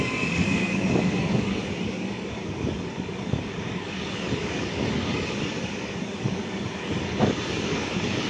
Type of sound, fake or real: fake